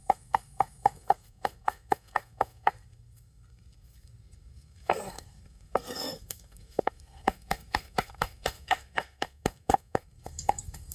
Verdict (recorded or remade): remade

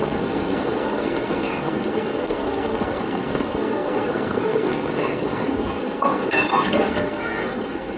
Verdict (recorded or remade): remade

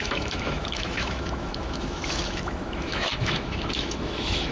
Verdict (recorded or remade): remade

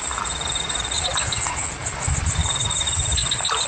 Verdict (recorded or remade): recorded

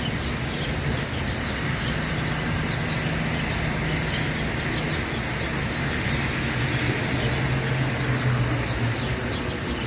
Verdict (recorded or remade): recorded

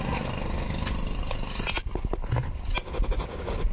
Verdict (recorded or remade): recorded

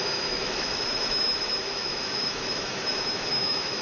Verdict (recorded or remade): remade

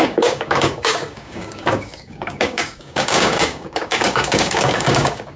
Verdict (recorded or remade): remade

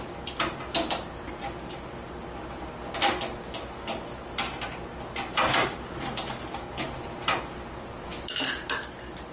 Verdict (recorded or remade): recorded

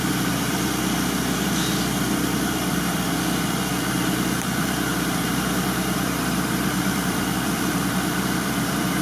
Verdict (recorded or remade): remade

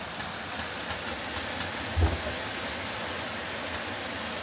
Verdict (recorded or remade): recorded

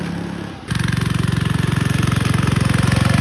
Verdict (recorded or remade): recorded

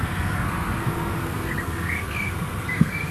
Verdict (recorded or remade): remade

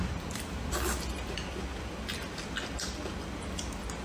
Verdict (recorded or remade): recorded